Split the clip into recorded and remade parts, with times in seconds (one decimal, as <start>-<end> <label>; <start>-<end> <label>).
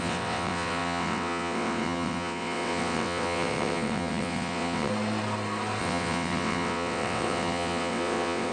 0.0-4.9 remade; 4.9-5.8 recorded; 5.8-8.5 remade